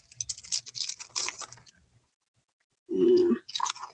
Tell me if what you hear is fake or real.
real